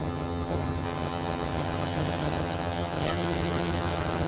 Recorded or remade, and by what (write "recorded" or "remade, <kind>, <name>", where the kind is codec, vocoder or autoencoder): remade, vocoder, HiFi-GAN